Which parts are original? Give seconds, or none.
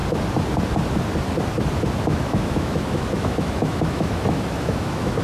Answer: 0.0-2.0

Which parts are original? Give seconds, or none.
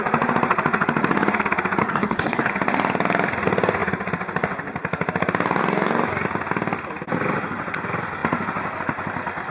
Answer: 0.0-1.8; 2.5-9.5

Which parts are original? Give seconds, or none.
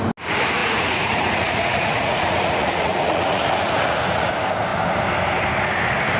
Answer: 0.0-0.6; 4.3-6.2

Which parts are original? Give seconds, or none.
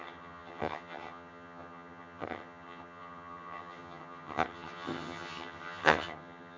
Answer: none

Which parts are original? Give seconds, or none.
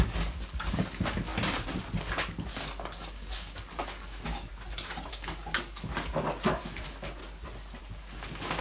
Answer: 1.3-2.0; 4.5-5.1; 5.9-6.5; 7.2-7.8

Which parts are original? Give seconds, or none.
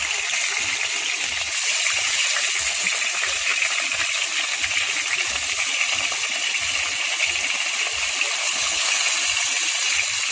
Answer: 0.0-8.4; 9.0-10.3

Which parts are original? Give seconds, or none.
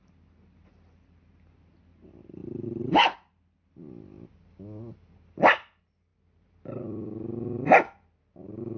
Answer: 6.1-8.2